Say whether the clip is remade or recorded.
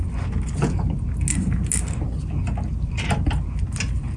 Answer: recorded